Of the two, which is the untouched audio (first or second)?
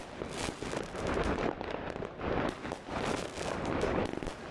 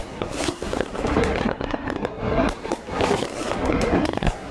first